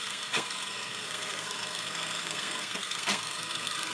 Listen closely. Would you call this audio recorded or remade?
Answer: remade